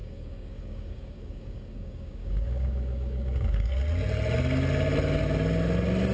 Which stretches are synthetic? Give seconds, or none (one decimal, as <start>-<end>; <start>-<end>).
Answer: 0.0-3.7